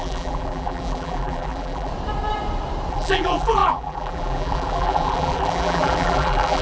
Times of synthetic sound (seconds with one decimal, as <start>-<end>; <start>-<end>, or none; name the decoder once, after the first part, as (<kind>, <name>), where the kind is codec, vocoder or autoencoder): 0.0-1.9 (vocoder, BigVGAN v2); 2.9-6.6